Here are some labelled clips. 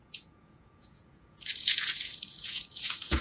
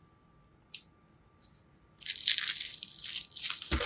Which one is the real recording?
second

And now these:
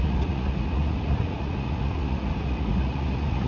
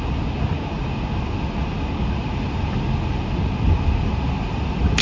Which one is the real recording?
second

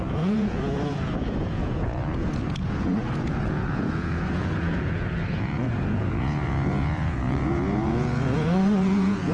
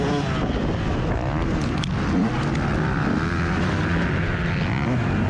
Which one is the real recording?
second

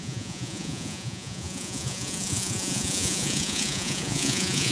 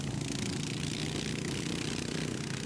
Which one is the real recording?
second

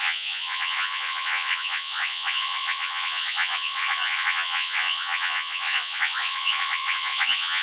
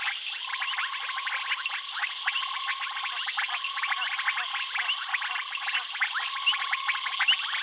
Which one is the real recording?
second